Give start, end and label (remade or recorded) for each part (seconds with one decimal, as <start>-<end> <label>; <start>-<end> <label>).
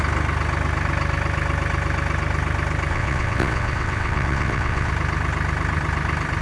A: 0.0-2.9 recorded; 2.9-4.9 remade; 4.9-6.4 recorded